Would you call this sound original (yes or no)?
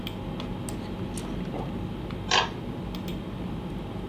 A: yes